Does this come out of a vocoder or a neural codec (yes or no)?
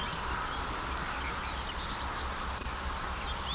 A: no